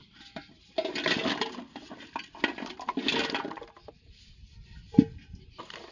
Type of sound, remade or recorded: recorded